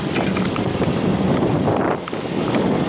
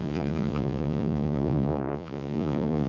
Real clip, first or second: first